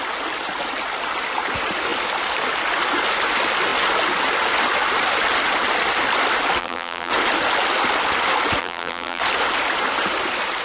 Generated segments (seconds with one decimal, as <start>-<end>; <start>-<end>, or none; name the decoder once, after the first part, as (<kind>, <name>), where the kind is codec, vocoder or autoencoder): 6.6-7.1 (vocoder, BigVGAN v2); 8.6-9.2